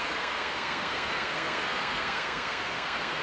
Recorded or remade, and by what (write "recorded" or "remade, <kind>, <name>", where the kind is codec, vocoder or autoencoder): remade, codec, SNAC